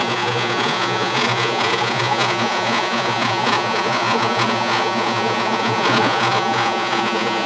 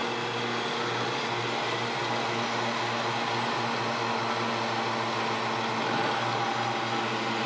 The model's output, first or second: first